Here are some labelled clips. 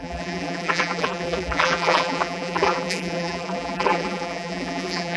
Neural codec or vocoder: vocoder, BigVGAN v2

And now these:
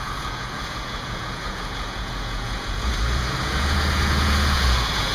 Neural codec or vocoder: vocoder, Vocos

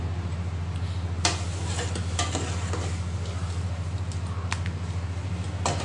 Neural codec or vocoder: none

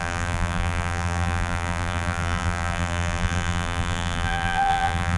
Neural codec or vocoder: vocoder, BigVGAN v2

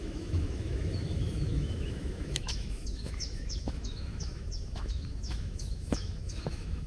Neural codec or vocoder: autoencoder, DAC-VAE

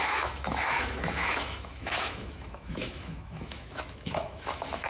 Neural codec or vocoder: autoencoder, DAC-VAE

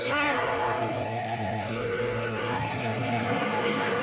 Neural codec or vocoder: codec, SNAC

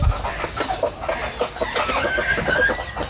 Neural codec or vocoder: none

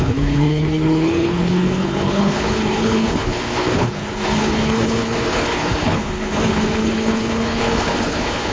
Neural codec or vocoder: codec, HILCodec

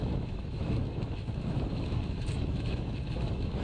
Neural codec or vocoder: autoencoder, DAC-VAE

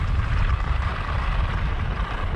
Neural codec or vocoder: none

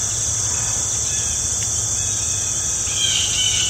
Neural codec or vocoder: none